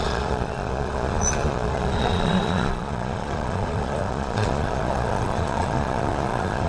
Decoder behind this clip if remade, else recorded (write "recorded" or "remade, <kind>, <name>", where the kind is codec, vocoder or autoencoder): remade, vocoder, Vocos